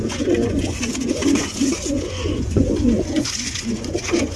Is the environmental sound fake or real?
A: fake